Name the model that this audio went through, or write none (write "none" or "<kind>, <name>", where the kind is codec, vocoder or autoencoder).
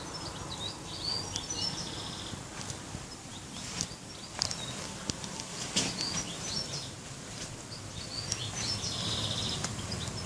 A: none